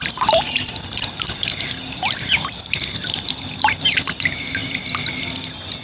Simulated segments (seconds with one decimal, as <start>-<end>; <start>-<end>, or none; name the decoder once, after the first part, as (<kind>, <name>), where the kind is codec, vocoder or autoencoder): none

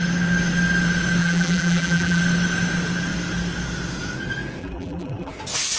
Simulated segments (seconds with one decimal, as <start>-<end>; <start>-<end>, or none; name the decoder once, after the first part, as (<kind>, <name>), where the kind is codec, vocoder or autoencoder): 1.2-2.2 (vocoder, BigVGAN v2); 4.6-5.3

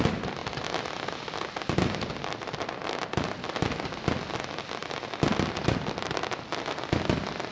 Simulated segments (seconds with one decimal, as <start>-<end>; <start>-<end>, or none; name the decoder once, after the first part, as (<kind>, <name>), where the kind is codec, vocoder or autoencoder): none

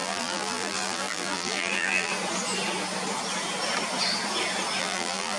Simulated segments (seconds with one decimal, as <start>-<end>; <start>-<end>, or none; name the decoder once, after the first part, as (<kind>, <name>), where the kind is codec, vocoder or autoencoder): 0.0-2.1 (vocoder, BigVGAN v2); 4.8-5.4

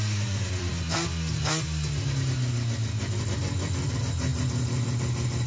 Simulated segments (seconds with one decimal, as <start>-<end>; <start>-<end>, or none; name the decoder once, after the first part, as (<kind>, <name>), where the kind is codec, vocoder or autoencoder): 0.0-0.7 (vocoder, BigVGAN v2); 3.0-4.3